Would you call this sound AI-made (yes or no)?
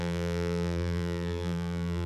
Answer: yes